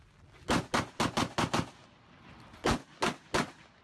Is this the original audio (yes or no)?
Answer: yes